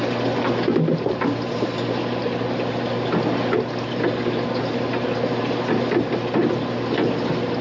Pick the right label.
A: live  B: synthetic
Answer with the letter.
A